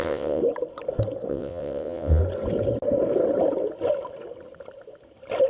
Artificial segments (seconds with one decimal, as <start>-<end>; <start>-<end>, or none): 0.0-0.4; 1.3-2.2